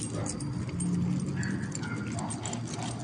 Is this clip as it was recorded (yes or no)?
yes